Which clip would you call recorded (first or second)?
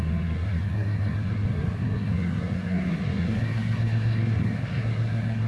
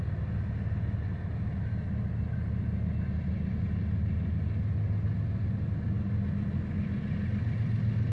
second